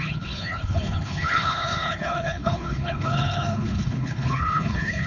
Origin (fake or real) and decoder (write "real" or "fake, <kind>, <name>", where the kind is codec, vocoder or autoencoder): fake, codec, HILCodec